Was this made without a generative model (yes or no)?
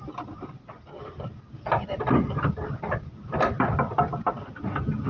yes